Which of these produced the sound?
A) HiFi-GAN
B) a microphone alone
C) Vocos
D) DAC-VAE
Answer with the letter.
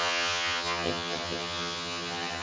A